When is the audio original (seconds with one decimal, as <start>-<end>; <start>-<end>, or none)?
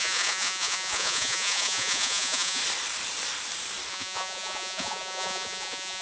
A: 2.6-3.9